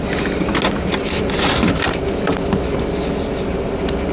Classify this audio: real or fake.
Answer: real